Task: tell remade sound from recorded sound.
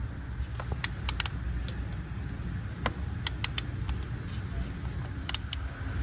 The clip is recorded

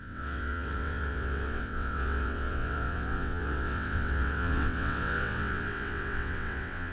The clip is remade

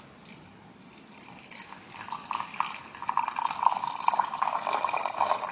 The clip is recorded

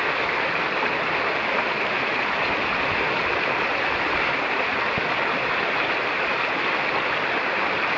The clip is recorded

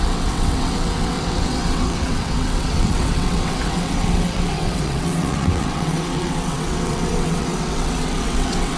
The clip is remade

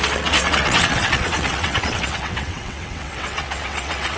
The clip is remade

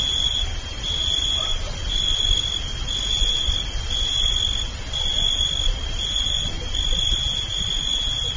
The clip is recorded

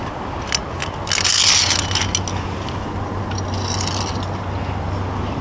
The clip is recorded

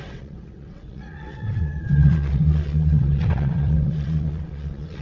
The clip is remade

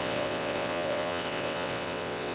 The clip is remade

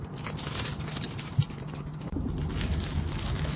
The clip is recorded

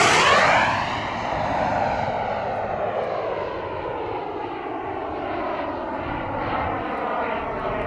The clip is recorded